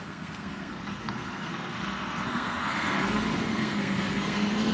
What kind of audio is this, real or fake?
fake